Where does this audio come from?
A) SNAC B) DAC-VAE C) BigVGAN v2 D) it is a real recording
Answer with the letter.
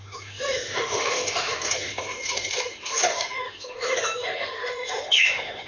B